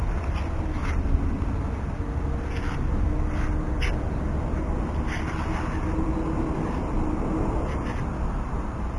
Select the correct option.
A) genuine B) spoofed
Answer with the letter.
A